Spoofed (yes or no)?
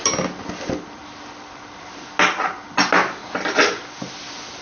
no